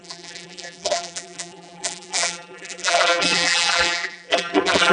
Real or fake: fake